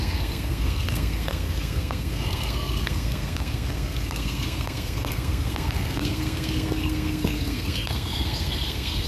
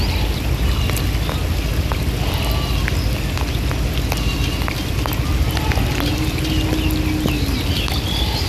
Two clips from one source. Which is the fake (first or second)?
first